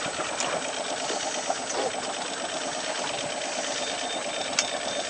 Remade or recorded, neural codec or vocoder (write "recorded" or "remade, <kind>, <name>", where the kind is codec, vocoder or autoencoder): recorded